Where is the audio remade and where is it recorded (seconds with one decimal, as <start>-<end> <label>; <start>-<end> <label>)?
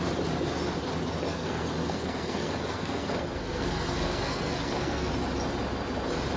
0.0-1.3 recorded; 1.3-5.1 remade; 5.1-6.4 recorded